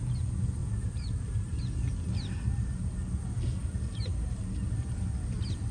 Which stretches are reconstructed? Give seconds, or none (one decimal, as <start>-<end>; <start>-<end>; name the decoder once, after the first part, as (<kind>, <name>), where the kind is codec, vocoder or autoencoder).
none